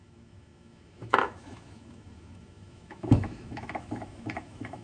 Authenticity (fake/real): fake